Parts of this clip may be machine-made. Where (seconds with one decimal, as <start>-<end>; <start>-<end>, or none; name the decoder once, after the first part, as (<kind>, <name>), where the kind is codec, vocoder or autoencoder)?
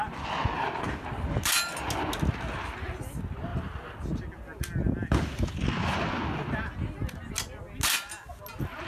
none